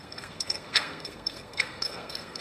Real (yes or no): no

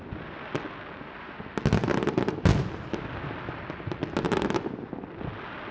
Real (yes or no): yes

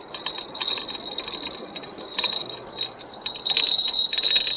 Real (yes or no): yes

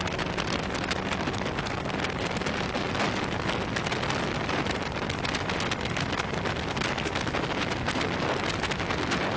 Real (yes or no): yes